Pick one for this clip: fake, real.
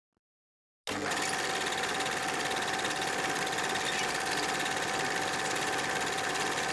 real